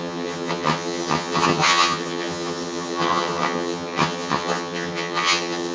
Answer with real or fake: fake